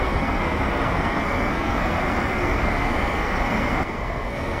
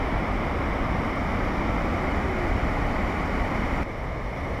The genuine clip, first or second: second